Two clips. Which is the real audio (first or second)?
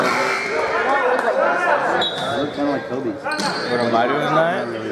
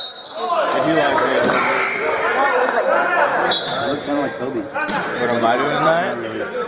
first